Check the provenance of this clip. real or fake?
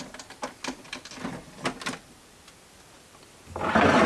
real